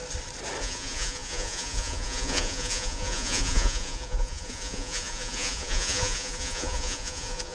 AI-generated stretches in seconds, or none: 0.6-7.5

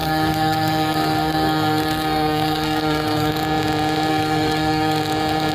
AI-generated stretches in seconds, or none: 0.0-3.3; 4.1-5.0

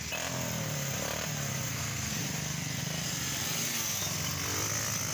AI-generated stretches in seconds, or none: 1.7-2.2